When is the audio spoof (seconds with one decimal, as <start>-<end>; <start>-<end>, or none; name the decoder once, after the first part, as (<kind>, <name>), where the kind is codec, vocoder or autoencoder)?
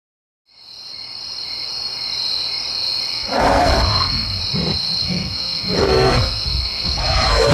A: 3.1-4.4 (codec, SNAC); 5.0-7.5